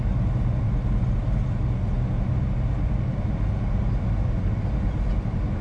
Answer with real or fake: real